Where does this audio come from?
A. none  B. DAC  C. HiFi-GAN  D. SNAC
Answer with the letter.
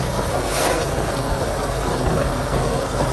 D